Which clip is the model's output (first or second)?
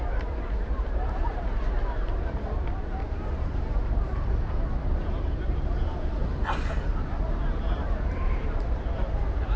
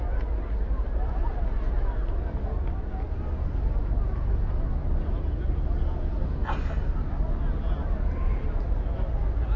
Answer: first